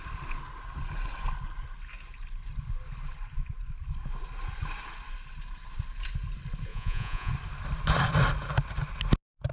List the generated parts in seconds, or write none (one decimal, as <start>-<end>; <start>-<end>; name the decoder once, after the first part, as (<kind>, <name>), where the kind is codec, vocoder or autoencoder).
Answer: 6.7-7.3 (vocoder, Vocos)